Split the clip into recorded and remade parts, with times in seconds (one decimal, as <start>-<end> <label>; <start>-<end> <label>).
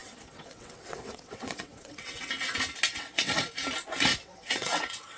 0.0-2.3 remade; 2.3-2.9 recorded; 2.9-3.5 remade; 3.5-4.1 recorded; 4.1-5.2 remade